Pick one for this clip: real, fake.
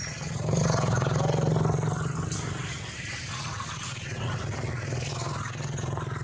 real